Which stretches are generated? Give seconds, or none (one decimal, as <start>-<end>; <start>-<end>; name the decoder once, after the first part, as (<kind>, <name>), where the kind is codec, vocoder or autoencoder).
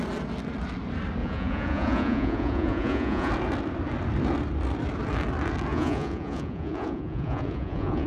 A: 1.2-3.3 (vocoder, Vocos); 5.7-8.1